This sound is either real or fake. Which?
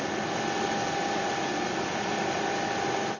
real